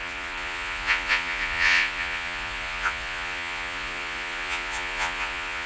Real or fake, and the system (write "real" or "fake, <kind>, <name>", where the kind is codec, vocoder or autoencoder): fake, vocoder, Vocos